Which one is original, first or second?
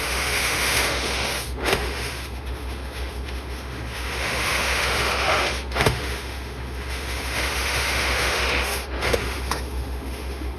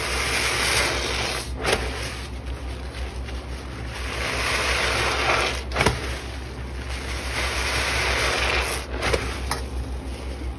second